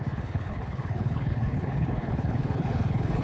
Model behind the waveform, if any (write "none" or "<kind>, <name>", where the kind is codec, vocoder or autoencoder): codec, HILCodec